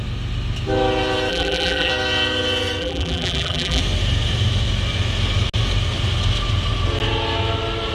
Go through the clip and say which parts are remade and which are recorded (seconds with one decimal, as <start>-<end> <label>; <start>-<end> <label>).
0.0-1.3 recorded; 1.3-1.9 remade; 1.9-2.8 recorded; 2.8-3.8 remade; 3.8-7.9 recorded